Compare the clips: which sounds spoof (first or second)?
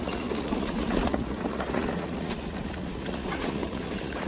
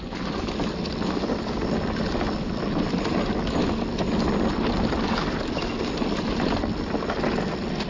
first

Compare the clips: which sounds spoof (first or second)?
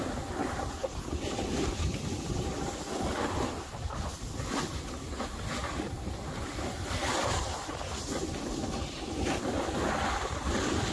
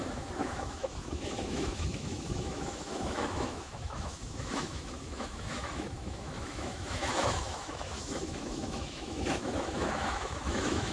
second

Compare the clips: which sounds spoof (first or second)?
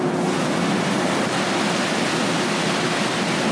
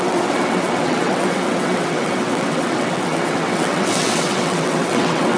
second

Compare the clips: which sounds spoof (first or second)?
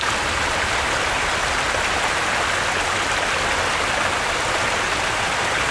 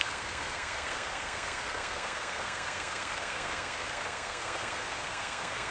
second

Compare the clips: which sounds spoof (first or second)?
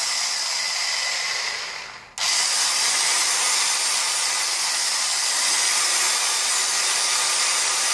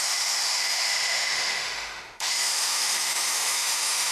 second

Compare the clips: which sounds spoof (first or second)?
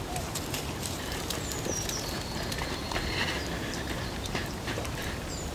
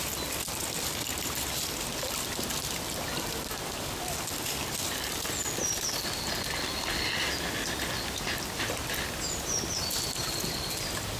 first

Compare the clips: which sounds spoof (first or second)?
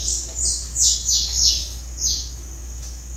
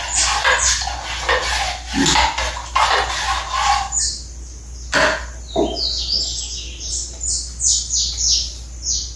first